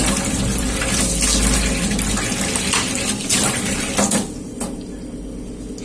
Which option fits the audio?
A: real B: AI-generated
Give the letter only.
A